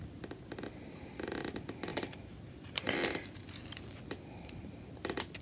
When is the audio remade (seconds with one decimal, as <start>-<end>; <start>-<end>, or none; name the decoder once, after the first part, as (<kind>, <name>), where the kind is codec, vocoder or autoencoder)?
none